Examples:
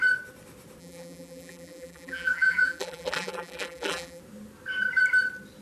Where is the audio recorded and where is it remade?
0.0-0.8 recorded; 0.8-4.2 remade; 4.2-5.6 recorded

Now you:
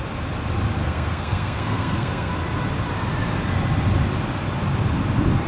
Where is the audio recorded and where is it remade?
0.0-0.8 recorded; 0.8-2.3 remade; 2.3-5.5 recorded

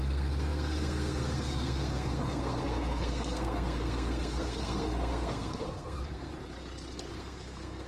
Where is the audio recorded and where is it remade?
0.0-6.3 remade; 6.3-7.1 recorded; 7.1-7.9 remade